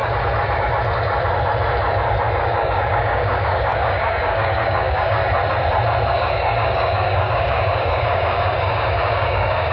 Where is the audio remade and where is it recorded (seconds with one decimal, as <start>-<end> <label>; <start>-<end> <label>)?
0.0-2.4 recorded; 2.4-5.2 remade; 5.2-6.1 recorded; 6.1-9.7 remade